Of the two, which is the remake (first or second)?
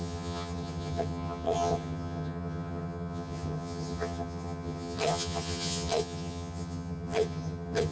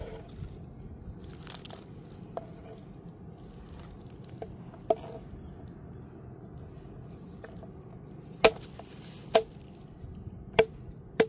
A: first